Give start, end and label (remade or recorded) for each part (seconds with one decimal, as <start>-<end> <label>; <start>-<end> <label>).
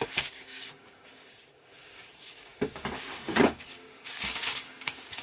0.0-5.2 remade